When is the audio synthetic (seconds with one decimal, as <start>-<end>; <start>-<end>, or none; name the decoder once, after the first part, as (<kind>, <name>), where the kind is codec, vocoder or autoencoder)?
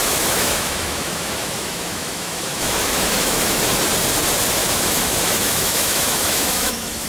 0.0-3.7 (autoencoder, DAC-VAE); 4.6-7.1